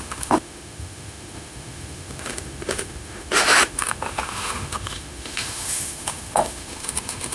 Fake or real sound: fake